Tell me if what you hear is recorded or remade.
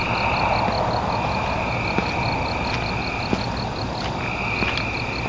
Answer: recorded